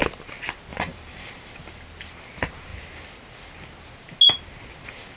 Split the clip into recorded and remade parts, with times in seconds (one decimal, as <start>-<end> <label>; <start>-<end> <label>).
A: 0.0-0.7 recorded; 0.7-1.5 remade; 1.5-5.2 recorded